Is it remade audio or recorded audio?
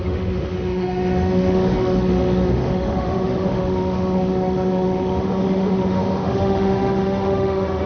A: remade